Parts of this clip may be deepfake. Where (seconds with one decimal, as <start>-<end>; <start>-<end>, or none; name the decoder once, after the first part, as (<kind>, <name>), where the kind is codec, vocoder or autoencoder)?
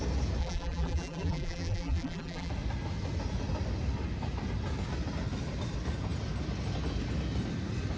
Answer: 0.4-2.5 (vocoder, BigVGAN v2)